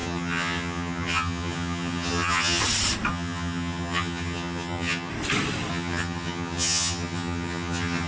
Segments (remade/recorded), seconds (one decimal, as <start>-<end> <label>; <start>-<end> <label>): 0.0-2.6 remade; 2.6-3.1 recorded; 3.1-5.1 remade; 5.1-5.7 recorded; 5.7-8.1 remade